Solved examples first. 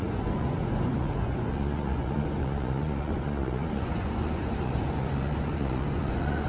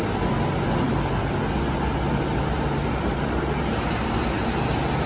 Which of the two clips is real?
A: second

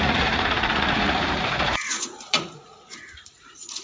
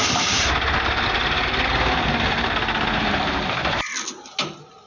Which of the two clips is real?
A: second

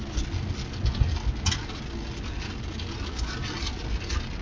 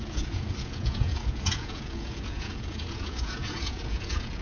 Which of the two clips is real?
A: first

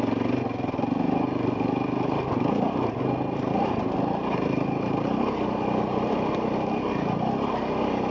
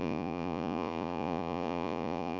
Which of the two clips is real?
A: first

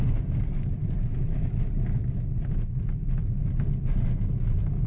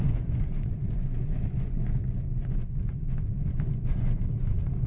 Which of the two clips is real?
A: first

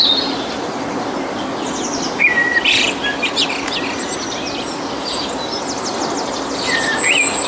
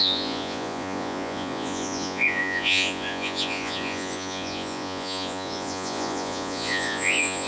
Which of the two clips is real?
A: first